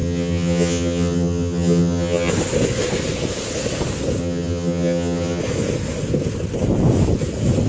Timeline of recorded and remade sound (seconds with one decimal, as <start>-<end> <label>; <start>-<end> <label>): 0.0-2.3 remade; 2.3-4.2 recorded; 4.2-5.4 remade; 5.4-7.7 recorded